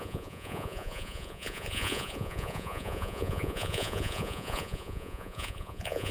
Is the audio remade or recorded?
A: remade